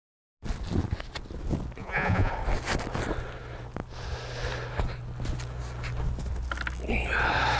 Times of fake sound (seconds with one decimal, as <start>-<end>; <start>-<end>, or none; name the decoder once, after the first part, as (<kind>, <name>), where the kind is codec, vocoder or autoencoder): 1.8-2.3 (vocoder, Vocos)